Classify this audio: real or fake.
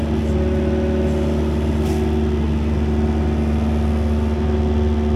real